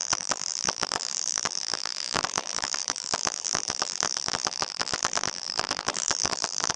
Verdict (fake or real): fake